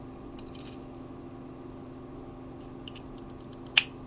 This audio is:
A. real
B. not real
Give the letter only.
A